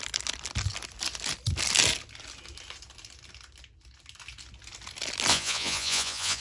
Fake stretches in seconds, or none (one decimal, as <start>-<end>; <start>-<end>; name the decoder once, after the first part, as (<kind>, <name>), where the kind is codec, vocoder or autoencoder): 5.3-6.4 (vocoder, Vocos)

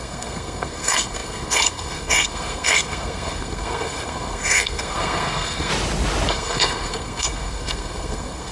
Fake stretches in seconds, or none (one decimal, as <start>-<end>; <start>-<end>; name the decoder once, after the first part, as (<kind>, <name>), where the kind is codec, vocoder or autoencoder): 0.0-5.7 (codec, SNAC); 6.3-8.5

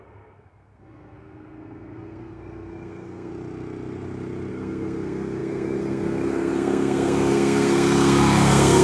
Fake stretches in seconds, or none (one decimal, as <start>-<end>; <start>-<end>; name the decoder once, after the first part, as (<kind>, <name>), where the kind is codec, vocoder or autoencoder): 0.0-3.3 (codec, SNAC); 4.5-8.8

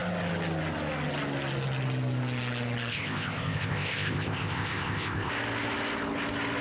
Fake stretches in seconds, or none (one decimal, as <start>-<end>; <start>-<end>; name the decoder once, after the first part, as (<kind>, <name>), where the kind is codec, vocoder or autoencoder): 2.9-5.3 (codec, ZipCodec)

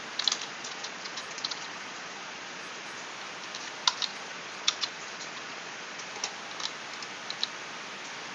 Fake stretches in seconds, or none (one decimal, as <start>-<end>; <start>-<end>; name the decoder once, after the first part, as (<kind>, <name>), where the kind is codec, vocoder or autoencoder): 0.5-3.0 (vocoder, Vocos); 4.1-6.1

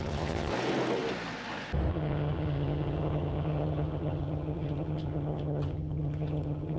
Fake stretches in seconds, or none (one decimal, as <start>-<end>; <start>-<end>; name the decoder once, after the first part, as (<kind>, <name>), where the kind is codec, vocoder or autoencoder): 0.0-0.5 (vocoder, HiFi-GAN); 1.9-6.8

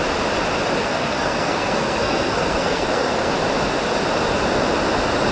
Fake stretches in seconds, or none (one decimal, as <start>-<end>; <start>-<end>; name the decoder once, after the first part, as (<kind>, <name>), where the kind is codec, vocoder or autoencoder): 0.8-3.3 (codec, SNAC)